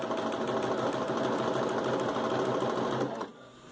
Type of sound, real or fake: real